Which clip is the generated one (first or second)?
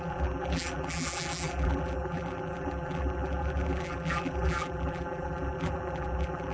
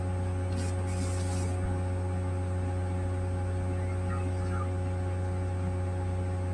first